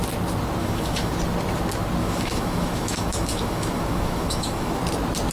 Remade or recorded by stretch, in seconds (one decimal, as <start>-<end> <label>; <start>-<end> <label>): 0.0-0.6 recorded; 0.6-1.1 remade; 1.1-2.0 recorded; 2.0-4.8 remade; 4.8-5.3 recorded